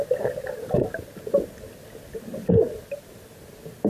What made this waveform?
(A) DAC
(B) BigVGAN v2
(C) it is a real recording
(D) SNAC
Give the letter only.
C